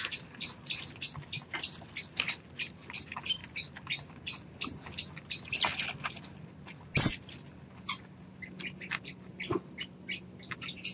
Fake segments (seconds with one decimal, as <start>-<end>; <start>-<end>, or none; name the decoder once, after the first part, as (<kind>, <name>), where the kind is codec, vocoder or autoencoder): none